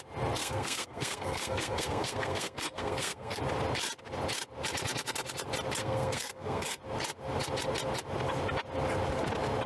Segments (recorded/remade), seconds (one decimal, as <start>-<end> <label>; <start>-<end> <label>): 0.0-0.4 recorded; 0.4-3.4 remade; 3.4-5.8 recorded; 5.8-6.8 remade; 6.8-9.7 recorded